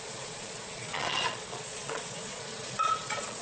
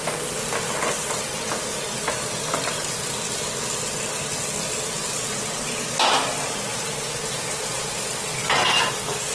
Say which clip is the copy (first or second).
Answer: first